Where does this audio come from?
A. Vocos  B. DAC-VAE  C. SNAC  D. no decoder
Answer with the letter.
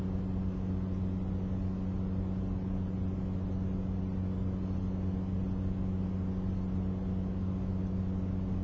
D